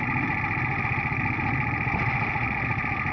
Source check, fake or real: real